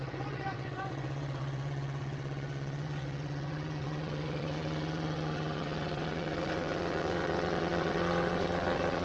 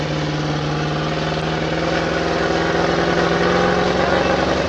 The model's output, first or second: first